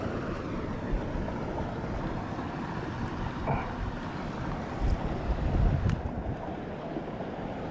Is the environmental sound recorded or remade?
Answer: recorded